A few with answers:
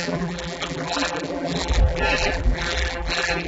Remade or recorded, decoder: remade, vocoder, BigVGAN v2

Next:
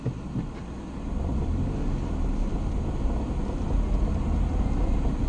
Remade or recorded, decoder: recorded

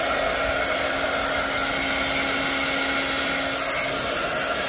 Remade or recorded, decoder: recorded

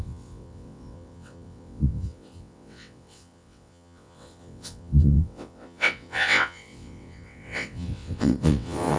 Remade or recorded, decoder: remade, vocoder, WaveNeXt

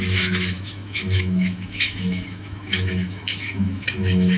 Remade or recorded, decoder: remade, autoencoder, DAC-VAE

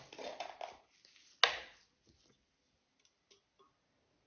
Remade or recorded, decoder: recorded